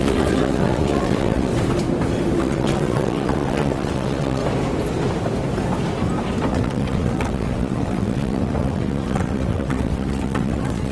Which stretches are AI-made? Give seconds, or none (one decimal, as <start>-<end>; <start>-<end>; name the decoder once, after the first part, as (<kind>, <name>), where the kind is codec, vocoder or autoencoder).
0.0-1.5 (vocoder, WaveNeXt); 2.4-4.4; 6.5-10.9